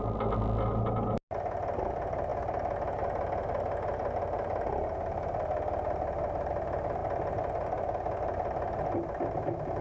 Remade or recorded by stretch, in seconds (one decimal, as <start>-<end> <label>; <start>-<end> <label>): 0.0-9.8 recorded